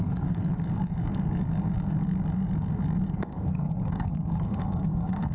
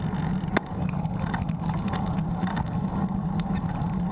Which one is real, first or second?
second